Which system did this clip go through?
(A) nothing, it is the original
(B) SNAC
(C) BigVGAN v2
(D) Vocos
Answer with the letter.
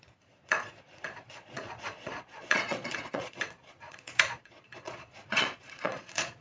D